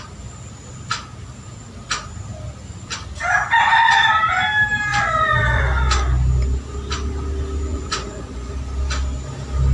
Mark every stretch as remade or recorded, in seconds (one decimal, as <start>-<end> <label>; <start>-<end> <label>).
0.0-4.9 recorded; 4.9-5.6 remade; 5.6-7.7 recorded; 7.7-8.5 remade; 8.5-9.7 recorded